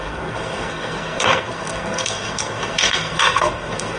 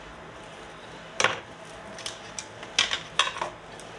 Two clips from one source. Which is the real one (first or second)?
second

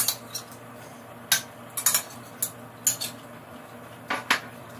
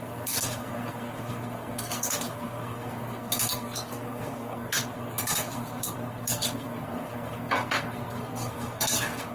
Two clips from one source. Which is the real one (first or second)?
first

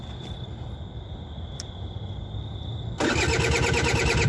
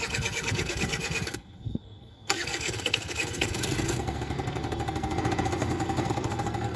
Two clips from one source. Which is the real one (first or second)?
first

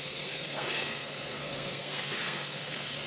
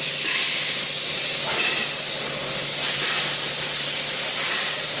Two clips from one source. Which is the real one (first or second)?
second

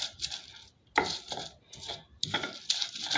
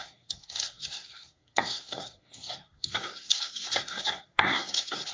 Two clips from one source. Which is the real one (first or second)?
first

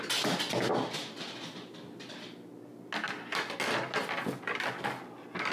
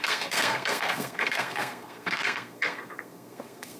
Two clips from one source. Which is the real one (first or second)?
first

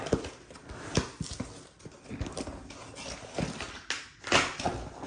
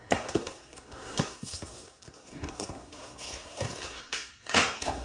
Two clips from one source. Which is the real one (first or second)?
first